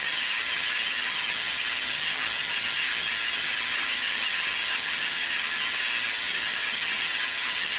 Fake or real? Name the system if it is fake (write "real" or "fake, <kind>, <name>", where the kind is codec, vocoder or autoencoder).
fake, vocoder, HiFi-GAN